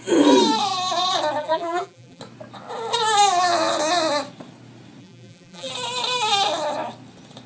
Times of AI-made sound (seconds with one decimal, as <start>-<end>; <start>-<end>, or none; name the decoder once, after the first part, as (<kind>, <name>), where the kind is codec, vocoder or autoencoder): 1.4-2.2 (vocoder, BigVGAN v2); 5.0-5.7